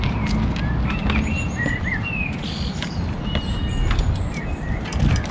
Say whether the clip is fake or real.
real